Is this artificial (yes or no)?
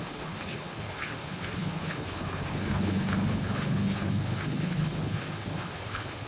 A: yes